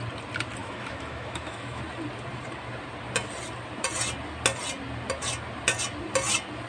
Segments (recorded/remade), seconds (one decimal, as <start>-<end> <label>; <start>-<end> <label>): 0.0-0.6 recorded; 0.6-1.8 remade; 1.8-6.7 recorded